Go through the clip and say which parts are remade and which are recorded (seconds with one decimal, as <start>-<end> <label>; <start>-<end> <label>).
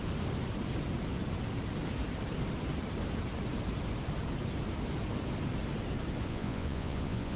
0.0-6.3 recorded; 6.3-7.4 remade